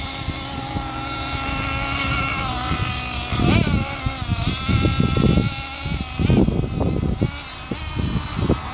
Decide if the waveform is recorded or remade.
recorded